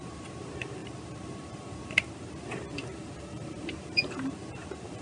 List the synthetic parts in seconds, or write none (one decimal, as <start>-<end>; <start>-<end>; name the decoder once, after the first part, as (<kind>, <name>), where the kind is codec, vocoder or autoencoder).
0.0-5.0 (vocoder, BigVGAN v2)